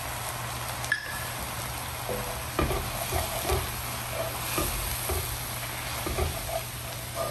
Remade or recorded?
recorded